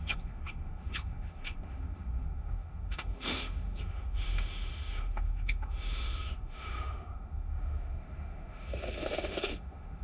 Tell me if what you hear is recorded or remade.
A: remade